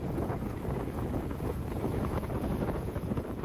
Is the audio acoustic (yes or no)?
no